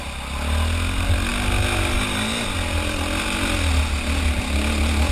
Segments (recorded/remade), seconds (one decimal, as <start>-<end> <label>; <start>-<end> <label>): 0.0-5.1 recorded